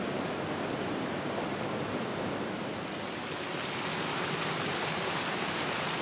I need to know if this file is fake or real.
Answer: real